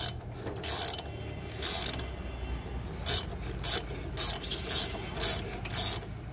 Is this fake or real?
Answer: real